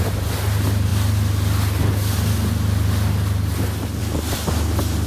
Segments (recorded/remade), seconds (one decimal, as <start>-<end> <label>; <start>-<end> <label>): 0.0-5.1 recorded